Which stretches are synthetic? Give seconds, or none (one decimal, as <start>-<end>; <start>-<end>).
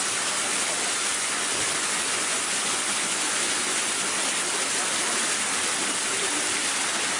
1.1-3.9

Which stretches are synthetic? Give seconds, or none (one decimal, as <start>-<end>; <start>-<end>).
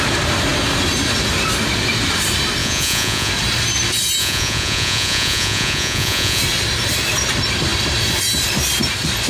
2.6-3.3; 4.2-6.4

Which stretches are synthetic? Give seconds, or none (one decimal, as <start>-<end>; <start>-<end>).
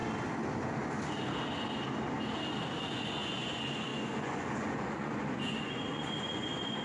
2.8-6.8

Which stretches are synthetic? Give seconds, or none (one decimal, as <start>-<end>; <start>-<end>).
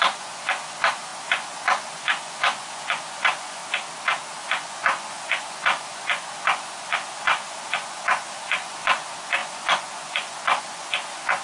0.0-3.6; 4.3-11.4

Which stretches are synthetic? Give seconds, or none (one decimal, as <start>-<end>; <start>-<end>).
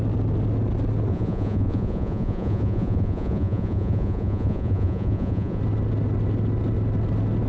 1.1-5.6